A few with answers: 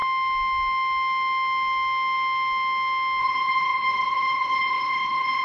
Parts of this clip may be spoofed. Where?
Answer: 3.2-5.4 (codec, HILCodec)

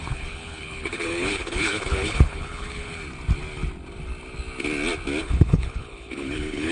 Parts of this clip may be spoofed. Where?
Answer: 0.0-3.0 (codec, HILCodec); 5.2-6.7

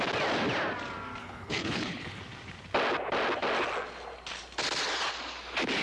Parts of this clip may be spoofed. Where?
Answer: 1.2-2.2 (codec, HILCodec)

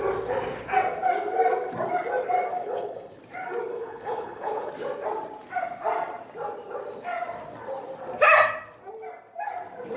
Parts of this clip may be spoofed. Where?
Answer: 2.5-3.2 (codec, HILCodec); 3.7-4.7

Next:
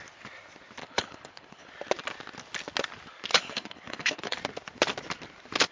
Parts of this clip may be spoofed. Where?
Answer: 0.8-1.7 (codec, HILCodec); 3.3-4.4

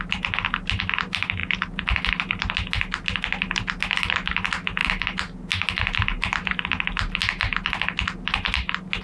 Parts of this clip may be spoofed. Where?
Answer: none